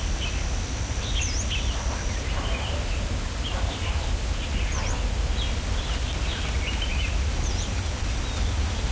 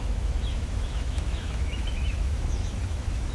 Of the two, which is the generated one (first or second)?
second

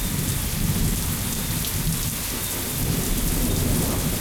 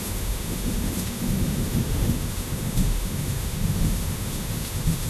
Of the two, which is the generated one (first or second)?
second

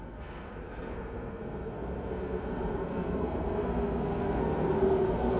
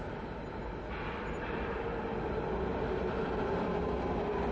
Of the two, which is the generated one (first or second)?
first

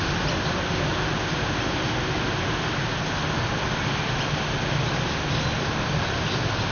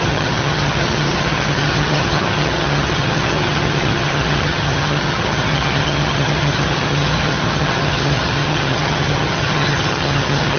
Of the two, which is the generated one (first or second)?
second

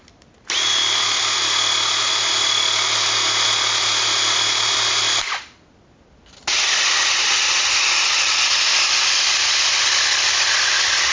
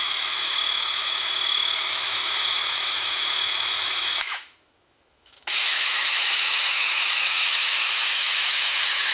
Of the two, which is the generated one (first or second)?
second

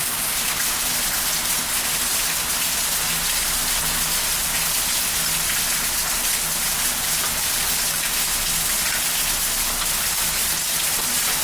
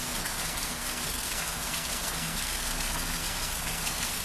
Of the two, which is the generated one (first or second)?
second